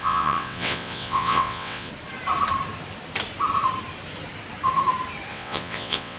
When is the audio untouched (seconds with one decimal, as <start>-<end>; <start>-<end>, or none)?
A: 1.9-5.3